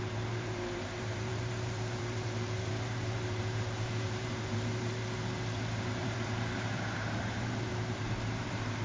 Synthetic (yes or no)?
yes